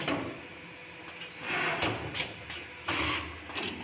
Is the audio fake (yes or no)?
no